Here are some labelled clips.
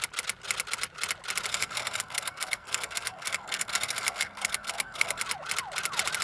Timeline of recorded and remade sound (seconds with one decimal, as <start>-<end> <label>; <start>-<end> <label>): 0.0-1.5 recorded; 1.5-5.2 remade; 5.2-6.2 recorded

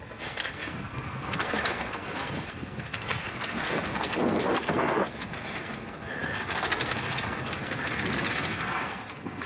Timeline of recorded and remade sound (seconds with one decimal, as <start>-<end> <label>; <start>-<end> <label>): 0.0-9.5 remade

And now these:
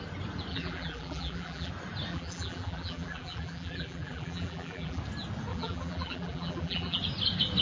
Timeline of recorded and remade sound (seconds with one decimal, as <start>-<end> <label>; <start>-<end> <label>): 0.0-0.5 recorded; 0.5-1.7 remade; 1.7-2.1 recorded; 2.1-5.0 remade; 5.0-5.5 recorded; 5.5-7.0 remade; 7.0-7.6 recorded

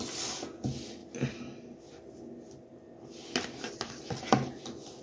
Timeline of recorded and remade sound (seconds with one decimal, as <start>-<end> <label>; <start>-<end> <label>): 0.0-5.0 recorded